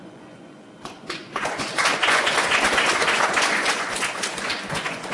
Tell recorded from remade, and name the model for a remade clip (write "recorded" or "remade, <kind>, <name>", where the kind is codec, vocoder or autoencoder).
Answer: remade, vocoder, Vocos